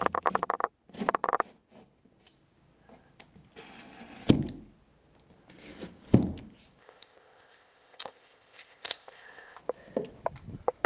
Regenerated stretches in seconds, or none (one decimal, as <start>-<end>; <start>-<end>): 6.8-9.6